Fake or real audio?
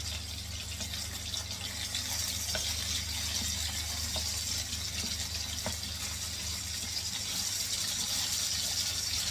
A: real